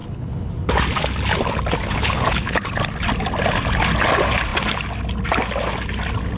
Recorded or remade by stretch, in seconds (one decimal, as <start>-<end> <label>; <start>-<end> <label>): 0.0-0.5 remade; 0.5-1.9 recorded; 1.9-2.7 remade; 2.7-6.4 recorded